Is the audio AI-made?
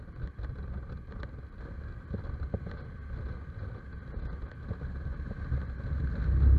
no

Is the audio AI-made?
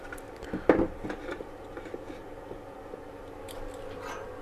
no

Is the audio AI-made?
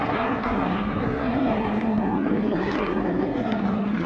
yes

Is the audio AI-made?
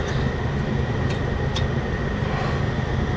no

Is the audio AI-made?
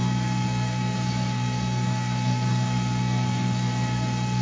yes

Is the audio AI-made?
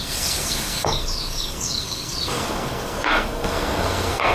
yes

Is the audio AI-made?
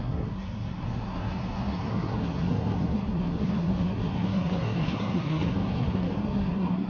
yes